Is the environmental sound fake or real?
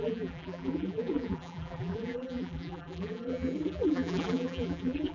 fake